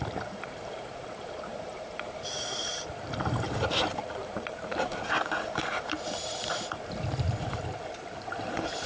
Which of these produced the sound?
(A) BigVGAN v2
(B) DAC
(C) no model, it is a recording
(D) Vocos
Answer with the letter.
A